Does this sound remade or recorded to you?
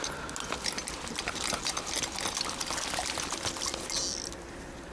recorded